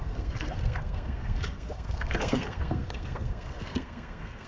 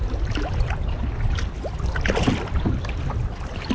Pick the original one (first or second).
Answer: second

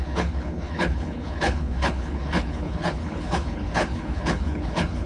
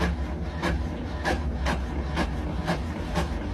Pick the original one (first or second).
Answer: second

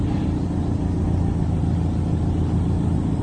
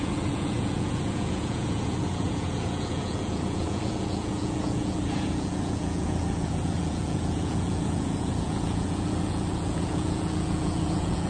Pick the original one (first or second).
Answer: first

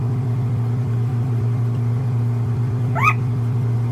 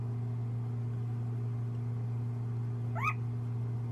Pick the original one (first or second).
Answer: second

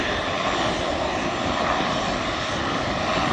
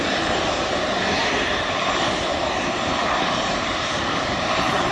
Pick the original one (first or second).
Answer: first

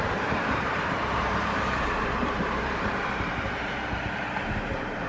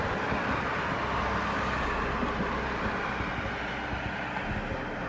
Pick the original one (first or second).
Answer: second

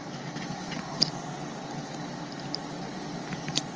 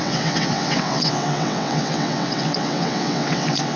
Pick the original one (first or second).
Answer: first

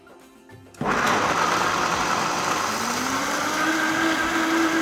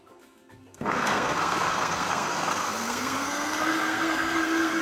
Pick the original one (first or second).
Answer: first